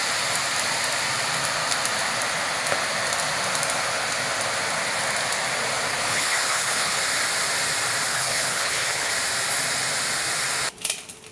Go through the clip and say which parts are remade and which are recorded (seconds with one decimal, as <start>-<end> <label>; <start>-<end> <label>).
0.0-5.9 recorded; 5.9-7.0 remade; 7.0-8.1 recorded; 8.1-9.1 remade; 9.1-11.3 recorded